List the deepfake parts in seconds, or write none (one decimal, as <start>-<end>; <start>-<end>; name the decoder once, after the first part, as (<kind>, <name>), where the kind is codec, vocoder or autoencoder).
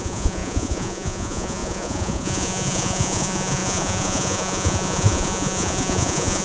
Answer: 0.0-6.4 (vocoder, Vocos)